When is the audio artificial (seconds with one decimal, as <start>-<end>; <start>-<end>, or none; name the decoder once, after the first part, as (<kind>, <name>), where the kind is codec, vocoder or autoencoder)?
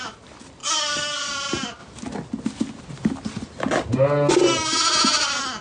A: 0.6-1.3 (codec, DAC)